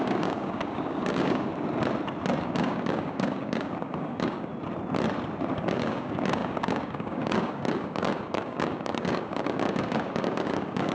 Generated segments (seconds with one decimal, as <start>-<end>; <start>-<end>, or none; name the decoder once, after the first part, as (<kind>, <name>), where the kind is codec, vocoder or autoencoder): 0.0-1.5 (codec, DAC); 2.4-4.5; 5.5-10.9